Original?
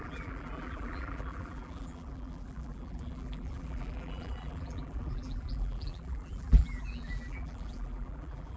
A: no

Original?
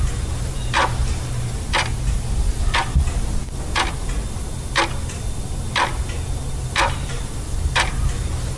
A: yes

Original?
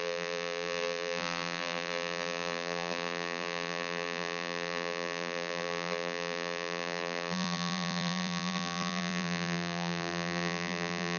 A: no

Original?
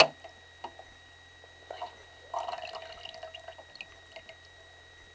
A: yes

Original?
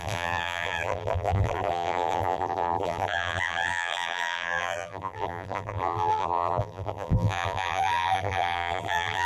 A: no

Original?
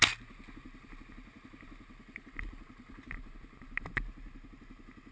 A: yes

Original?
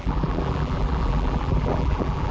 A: no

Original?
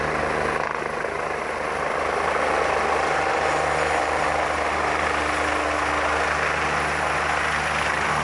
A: yes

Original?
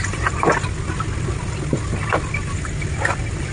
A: yes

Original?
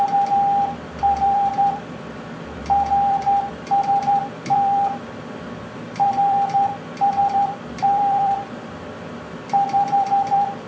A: no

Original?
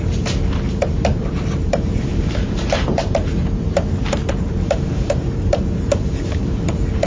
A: no